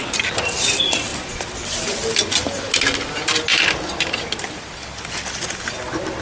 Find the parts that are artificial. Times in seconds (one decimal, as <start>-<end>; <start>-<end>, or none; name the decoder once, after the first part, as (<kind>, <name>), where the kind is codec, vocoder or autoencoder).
none